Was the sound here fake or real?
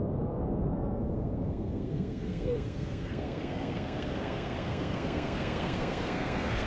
fake